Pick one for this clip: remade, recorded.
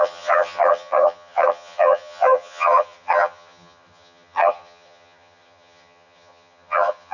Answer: remade